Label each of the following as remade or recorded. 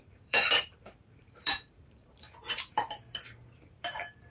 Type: remade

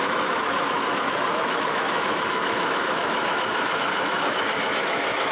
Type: remade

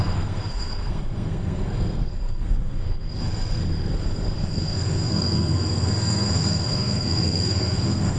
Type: remade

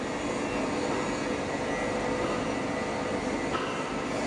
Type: recorded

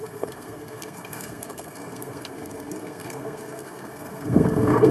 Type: remade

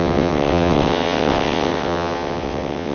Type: remade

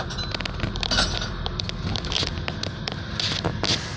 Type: recorded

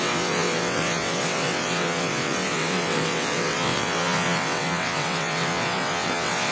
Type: remade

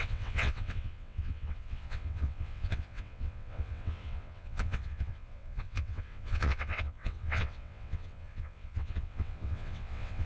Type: remade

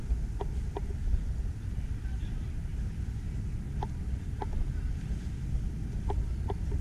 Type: recorded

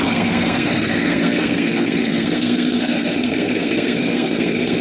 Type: remade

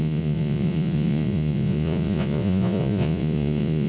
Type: remade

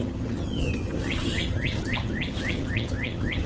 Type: remade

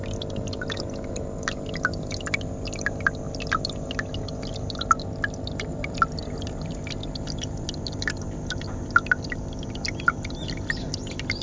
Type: recorded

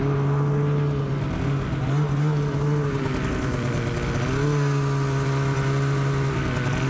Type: recorded